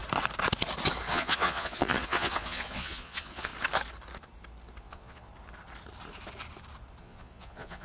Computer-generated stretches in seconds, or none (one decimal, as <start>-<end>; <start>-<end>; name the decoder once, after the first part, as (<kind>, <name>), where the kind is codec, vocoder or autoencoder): 1.1-3.5 (vocoder, Vocos); 4.8-5.3; 7.0-7.8